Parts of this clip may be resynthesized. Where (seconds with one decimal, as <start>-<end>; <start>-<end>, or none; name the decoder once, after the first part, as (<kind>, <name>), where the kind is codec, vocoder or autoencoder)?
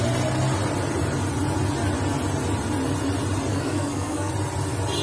3.5-4.3 (codec, SNAC)